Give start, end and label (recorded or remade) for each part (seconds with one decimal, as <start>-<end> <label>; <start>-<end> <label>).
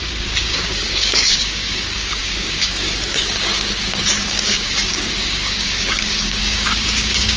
0.0-7.4 remade